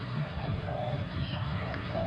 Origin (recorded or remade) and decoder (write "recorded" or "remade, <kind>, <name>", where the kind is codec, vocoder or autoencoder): remade, codec, SNAC